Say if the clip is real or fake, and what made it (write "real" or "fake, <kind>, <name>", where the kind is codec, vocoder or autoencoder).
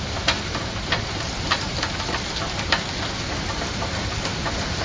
real